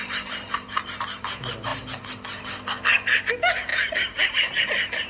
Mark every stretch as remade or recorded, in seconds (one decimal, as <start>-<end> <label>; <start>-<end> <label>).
0.0-5.1 recorded